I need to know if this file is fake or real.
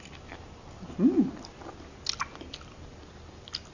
real